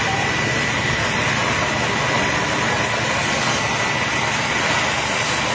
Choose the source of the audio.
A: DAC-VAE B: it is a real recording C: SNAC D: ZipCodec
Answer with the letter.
B